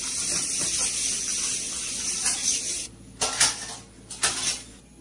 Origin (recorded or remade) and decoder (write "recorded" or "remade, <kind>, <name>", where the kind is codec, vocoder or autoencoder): recorded